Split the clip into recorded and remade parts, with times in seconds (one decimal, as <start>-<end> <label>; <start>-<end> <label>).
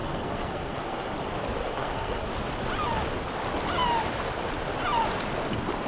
0.0-1.1 remade; 1.1-1.6 recorded; 1.6-2.3 remade; 2.3-5.9 recorded